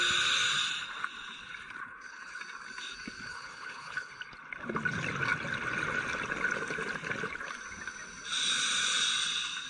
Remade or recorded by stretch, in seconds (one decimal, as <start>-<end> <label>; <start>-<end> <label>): 0.0-1.8 recorded; 1.8-2.4 remade; 2.4-3.3 recorded; 3.3-4.1 remade; 4.1-9.7 recorded